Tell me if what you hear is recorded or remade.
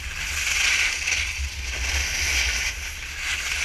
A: recorded